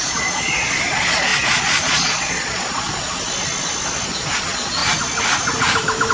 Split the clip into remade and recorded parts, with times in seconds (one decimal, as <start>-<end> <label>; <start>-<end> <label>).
0.0-3.1 remade; 3.1-4.2 recorded; 4.2-4.8 remade; 4.8-6.1 recorded